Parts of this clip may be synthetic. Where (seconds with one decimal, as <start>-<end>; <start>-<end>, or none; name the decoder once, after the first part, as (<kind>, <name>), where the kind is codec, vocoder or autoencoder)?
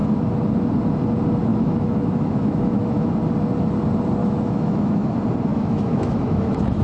1.5-3.1 (autoencoder, DAC-VAE); 4.2-5.1; 5.5-6.8